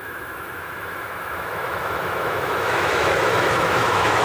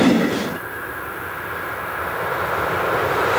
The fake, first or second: first